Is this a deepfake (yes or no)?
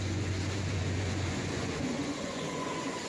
yes